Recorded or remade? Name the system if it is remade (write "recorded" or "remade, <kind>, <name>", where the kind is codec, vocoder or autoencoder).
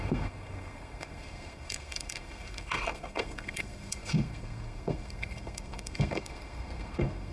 remade, codec, SNAC